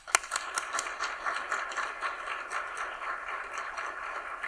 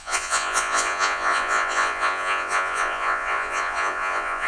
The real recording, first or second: first